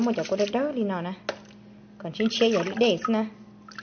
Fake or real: real